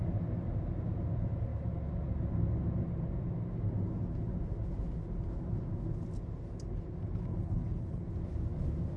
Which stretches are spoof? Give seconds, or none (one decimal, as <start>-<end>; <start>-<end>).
7.3-8.0